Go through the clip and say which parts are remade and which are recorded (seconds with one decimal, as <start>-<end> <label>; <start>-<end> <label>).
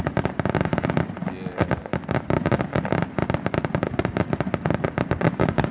0.0-1.2 remade; 1.2-1.9 recorded; 1.9-3.2 remade; 3.2-5.7 recorded